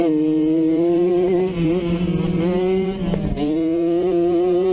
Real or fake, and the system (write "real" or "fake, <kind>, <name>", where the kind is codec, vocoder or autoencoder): fake, vocoder, BigVGAN v2